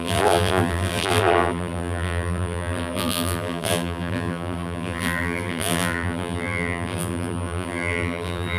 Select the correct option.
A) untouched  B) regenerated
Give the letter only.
B